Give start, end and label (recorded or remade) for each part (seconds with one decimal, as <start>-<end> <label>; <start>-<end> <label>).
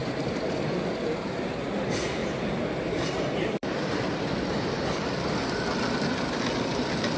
0.0-0.9 remade; 0.9-2.2 recorded; 2.2-5.3 remade; 5.3-7.2 recorded